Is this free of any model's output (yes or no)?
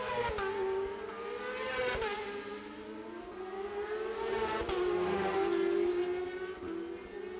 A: yes